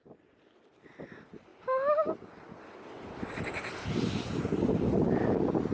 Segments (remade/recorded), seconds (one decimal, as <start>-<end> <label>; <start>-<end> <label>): 0.0-5.7 recorded